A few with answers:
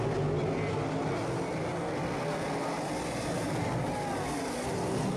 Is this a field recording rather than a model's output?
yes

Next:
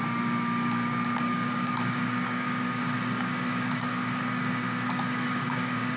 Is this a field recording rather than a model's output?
no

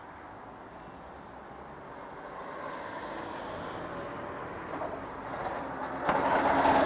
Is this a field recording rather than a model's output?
yes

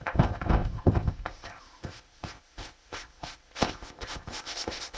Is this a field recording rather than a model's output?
no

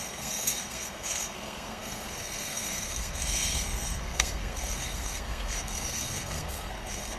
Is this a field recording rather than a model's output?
no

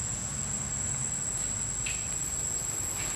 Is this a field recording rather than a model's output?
yes